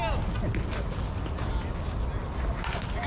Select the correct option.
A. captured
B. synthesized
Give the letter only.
A